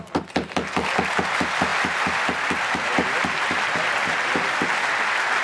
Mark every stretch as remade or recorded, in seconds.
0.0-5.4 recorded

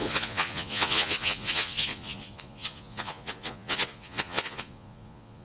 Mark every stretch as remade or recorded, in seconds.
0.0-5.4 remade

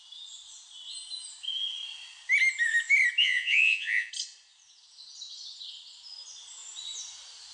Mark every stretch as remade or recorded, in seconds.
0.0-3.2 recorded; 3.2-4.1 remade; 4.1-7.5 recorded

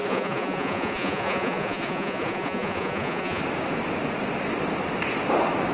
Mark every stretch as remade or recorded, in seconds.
0.0-3.4 remade; 3.4-5.7 recorded

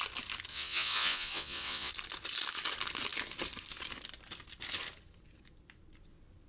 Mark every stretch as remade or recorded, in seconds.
0.0-0.5 recorded; 0.5-1.9 remade; 1.9-6.5 recorded

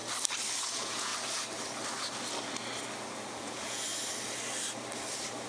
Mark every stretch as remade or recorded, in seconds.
0.0-0.6 recorded; 0.6-1.1 remade; 1.1-3.4 recorded; 3.4-3.9 remade; 3.9-5.5 recorded

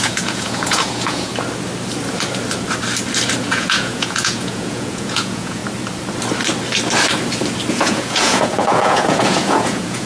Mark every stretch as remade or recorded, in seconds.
0.0-1.3 remade; 1.3-3.4 recorded; 3.4-5.6 remade; 5.6-7.7 recorded; 7.7-10.1 remade